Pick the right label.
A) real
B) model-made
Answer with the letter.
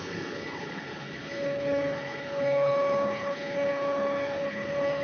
B